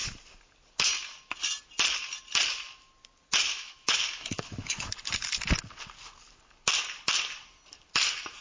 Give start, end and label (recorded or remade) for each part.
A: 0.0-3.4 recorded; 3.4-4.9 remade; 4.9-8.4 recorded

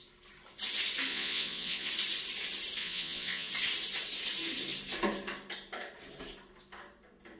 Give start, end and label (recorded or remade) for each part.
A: 0.0-1.1 recorded; 1.1-1.9 remade; 1.9-2.8 recorded; 2.8-3.5 remade; 3.5-7.4 recorded

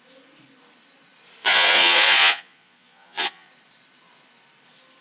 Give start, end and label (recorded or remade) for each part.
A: 0.0-1.4 recorded; 1.4-3.5 remade; 3.5-5.0 recorded

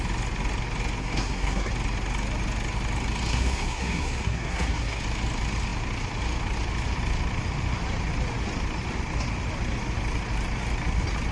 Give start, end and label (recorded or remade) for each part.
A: 0.0-1.0 recorded; 1.0-1.7 remade; 1.7-3.3 recorded; 3.3-5.0 remade; 5.0-11.3 recorded